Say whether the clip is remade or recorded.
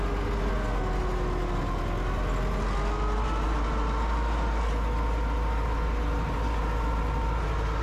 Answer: recorded